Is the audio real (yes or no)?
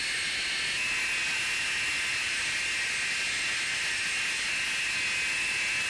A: yes